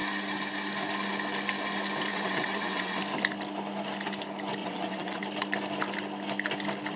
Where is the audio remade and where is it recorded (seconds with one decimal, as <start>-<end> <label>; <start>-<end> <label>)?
0.0-2.1 recorded; 2.1-3.0 remade; 3.0-4.6 recorded; 4.6-5.2 remade; 5.2-7.0 recorded